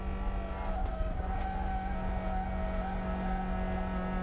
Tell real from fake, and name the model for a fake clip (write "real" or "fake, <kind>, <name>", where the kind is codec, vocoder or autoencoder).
real